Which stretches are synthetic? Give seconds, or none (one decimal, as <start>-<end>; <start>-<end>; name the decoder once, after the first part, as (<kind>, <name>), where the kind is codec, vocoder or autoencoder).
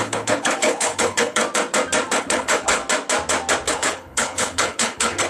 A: 0.0-1.4 (codec, HILCodec); 2.2-2.8; 3.7-5.3